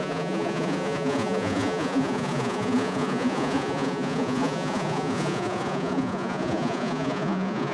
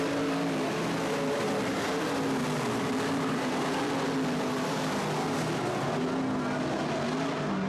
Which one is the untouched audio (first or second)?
second